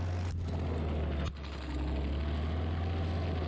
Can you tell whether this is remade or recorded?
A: recorded